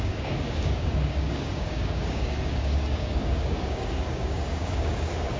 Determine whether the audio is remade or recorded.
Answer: remade